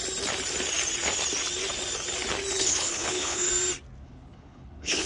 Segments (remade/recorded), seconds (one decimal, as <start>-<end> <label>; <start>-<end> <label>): 0.0-2.6 recorded; 2.6-3.5 remade; 3.5-4.0 recorded; 4.0-5.1 remade